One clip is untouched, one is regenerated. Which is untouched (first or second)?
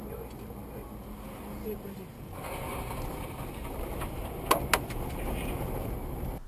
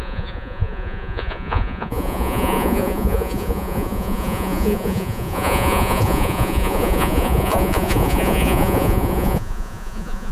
first